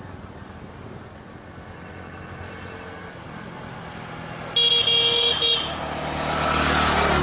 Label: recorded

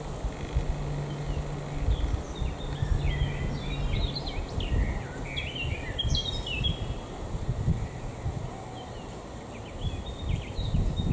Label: recorded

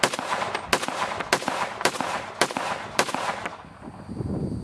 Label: recorded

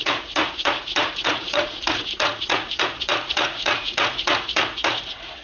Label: remade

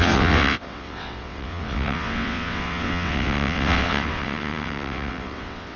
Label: remade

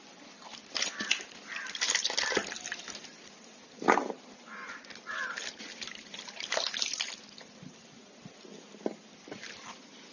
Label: recorded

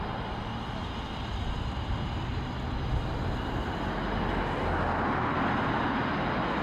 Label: recorded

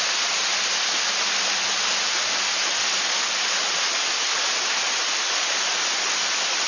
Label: recorded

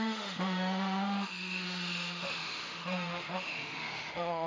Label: remade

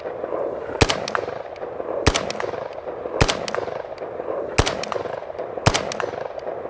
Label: recorded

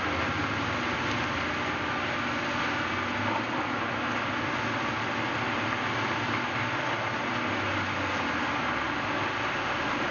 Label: recorded